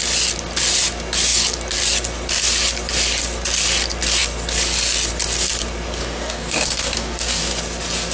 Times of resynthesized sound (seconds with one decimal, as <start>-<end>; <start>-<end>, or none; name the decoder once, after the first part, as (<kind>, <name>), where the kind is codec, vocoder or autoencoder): 6.0-7.5 (codec, DAC)